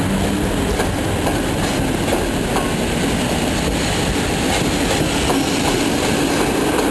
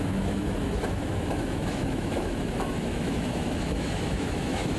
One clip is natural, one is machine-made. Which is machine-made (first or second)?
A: second